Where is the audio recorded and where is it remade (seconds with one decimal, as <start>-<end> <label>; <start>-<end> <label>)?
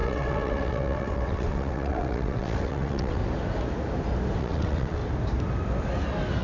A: 0.0-3.2 remade; 3.2-4.4 recorded; 4.4-5.0 remade; 5.0-6.4 recorded